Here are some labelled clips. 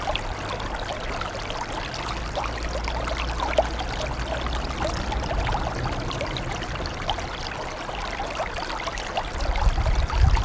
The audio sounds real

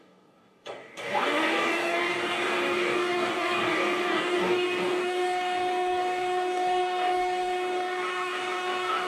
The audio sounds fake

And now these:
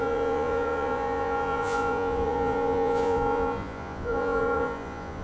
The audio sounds fake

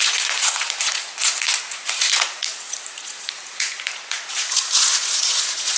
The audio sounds fake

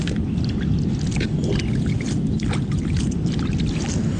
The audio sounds real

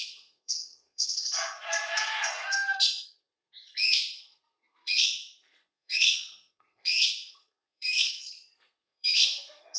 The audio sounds fake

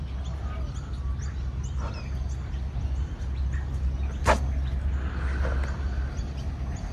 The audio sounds real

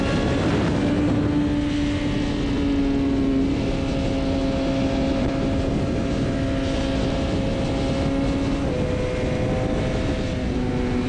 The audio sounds real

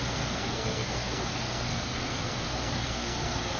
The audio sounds fake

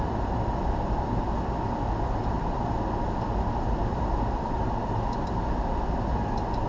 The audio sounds real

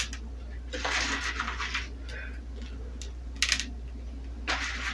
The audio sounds real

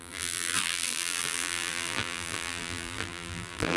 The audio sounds fake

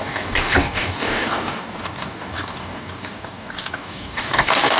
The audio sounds fake